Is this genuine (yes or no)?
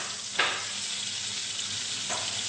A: yes